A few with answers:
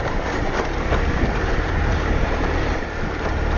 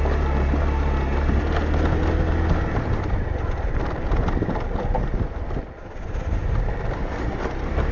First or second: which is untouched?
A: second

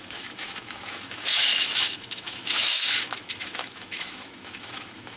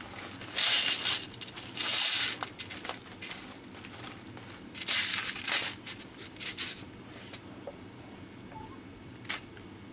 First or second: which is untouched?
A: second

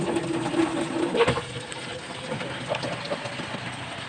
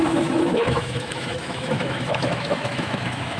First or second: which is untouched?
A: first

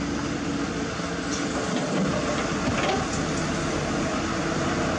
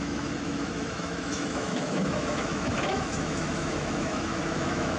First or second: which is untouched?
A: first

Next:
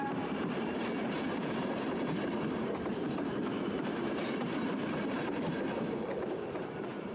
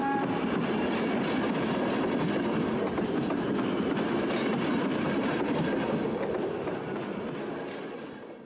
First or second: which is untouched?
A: second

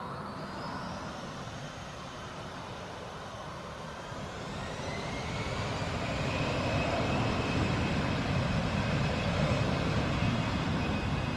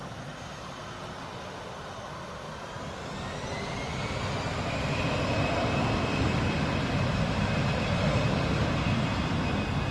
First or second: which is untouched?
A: second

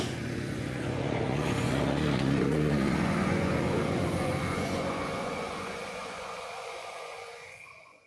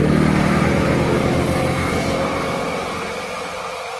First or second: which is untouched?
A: second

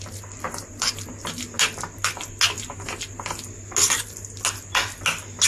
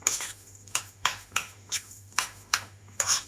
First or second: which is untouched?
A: first